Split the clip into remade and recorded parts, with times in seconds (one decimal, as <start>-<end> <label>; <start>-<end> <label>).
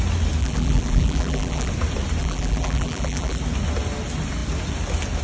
0.0-0.4 recorded; 0.4-1.7 remade; 1.7-2.2 recorded; 2.2-3.4 remade; 3.4-5.2 recorded